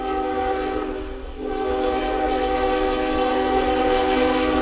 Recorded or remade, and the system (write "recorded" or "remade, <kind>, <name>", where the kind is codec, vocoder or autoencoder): remade, codec, SNAC